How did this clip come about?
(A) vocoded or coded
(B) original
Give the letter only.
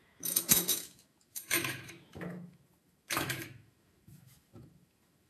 A